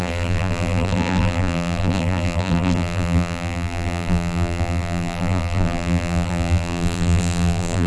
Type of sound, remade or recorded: remade